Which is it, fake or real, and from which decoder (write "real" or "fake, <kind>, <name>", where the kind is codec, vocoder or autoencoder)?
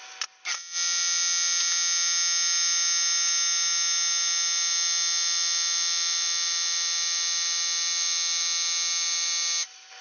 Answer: real